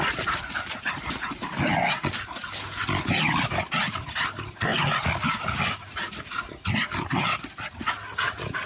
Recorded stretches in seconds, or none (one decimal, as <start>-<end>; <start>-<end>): 0.0-8.7